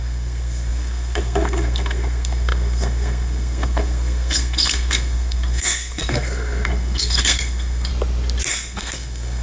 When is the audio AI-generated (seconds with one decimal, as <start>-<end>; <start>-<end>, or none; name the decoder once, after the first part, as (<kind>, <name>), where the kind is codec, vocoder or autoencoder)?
0.0-7.9 (codec, SNAC); 8.5-9.4